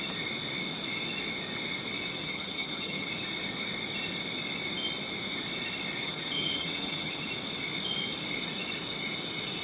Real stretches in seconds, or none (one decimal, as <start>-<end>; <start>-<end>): 0.0-2.2; 3.1-6.0; 7.2-9.6